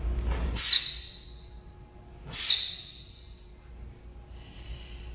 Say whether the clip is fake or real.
real